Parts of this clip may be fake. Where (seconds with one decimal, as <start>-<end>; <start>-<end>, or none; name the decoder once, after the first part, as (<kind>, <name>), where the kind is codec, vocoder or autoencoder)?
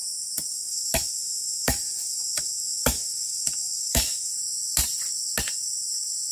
0.5-4.3 (autoencoder, DAC-VAE)